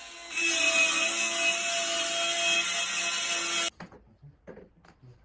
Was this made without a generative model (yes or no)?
yes